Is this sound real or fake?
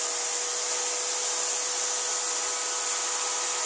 real